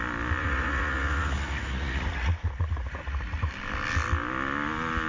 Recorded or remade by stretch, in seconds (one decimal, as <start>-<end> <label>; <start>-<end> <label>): 0.0-0.4 recorded; 0.4-3.5 remade; 3.5-5.1 recorded